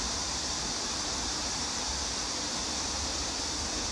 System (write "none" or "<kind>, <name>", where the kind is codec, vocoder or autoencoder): vocoder, BigVGAN v2